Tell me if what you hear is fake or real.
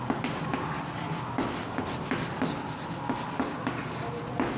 real